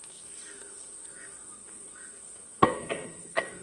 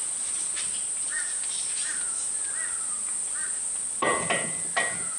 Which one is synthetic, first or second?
first